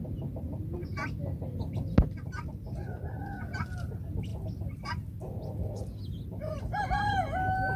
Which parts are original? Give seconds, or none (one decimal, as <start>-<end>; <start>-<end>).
0.0-7.8